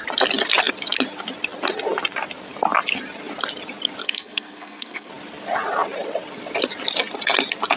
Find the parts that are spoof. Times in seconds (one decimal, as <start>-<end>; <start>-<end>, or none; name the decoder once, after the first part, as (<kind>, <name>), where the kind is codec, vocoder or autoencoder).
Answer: 4.0-5.1 (codec, SNAC)